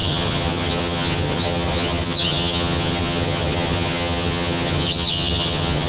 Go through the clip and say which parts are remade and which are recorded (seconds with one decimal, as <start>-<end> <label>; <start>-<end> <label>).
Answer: 0.0-5.9 remade